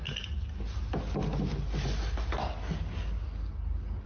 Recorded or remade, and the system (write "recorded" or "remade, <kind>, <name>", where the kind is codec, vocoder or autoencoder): recorded